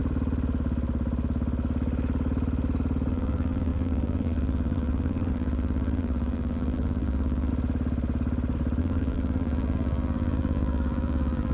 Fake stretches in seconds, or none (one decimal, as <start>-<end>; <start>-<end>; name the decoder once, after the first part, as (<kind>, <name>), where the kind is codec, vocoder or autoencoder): 3.1-7.5 (vocoder, BigVGAN v2); 8.8-11.5